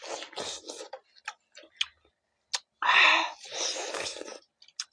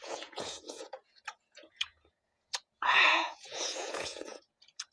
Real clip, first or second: first